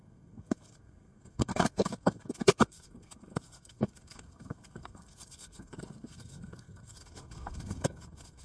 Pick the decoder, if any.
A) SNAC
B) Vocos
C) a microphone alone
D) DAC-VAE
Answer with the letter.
A